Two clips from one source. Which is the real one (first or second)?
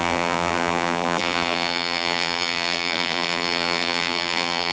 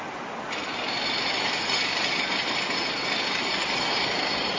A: second